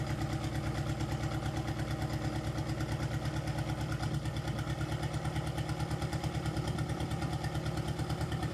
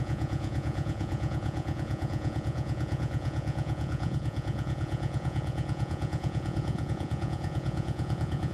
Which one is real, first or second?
first